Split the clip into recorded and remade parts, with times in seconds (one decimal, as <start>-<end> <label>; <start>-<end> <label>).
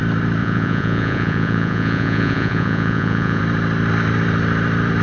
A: 0.0-0.4 recorded; 0.4-3.4 remade; 3.4-5.0 recorded